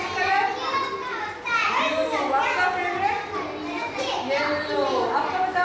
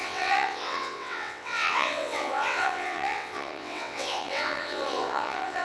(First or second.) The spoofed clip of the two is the second